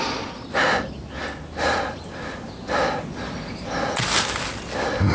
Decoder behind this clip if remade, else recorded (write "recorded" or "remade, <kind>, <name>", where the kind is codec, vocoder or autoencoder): recorded